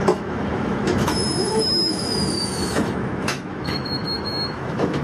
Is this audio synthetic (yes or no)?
yes